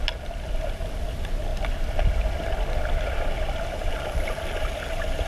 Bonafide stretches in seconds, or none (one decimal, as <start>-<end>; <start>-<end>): 0.0-5.3